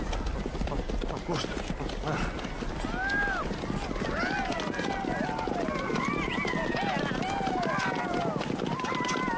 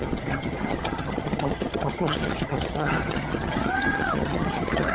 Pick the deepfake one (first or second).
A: second